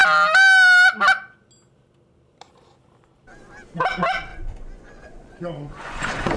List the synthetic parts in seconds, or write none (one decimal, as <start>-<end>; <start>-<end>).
4.3-6.4

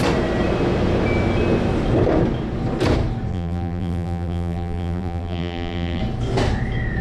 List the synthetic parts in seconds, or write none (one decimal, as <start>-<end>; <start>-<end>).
3.3-6.0

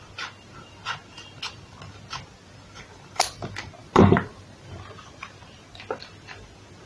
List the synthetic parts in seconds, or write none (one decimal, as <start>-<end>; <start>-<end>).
3.8-4.7

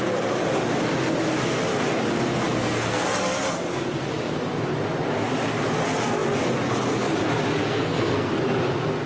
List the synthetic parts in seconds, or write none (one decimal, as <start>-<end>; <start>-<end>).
2.5-3.2; 7.6-8.3

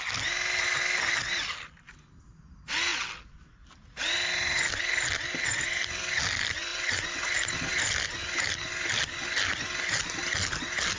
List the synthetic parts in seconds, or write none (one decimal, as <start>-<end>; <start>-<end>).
none

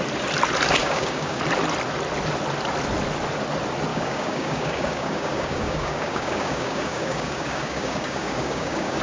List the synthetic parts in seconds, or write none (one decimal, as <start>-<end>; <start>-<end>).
0.8-1.4; 3.9-9.0